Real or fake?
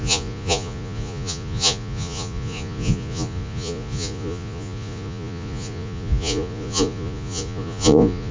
fake